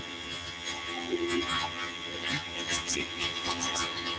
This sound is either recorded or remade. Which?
remade